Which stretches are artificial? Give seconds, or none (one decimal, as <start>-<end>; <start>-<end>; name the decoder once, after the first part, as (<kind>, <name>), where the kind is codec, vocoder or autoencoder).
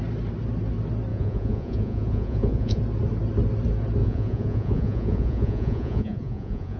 1.1-2.8 (vocoder, Vocos); 4.0-6.8